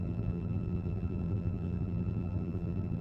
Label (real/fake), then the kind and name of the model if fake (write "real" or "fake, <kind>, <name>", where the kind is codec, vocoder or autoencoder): fake, vocoder, BigVGAN v2